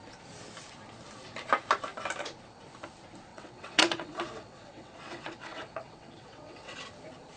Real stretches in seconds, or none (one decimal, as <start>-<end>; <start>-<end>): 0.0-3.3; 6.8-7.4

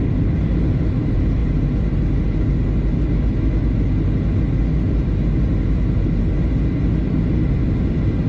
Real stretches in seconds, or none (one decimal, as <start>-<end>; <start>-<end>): 0.0-8.3

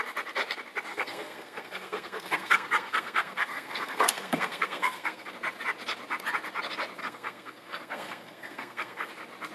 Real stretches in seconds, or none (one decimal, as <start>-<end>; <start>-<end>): 0.0-0.9; 5.3-7.0; 9.1-9.5

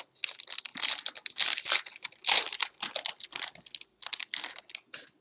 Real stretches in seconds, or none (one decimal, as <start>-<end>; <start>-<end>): 0.0-5.2